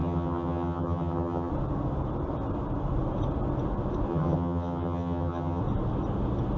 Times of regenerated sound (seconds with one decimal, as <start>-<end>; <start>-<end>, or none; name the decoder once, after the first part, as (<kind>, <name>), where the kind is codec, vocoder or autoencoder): 0.0-1.5 (vocoder, HiFi-GAN); 4.1-5.6